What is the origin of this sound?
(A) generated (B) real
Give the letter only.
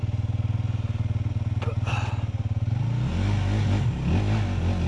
B